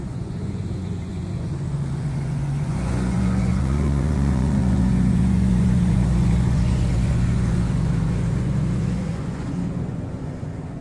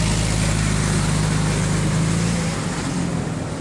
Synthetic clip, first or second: first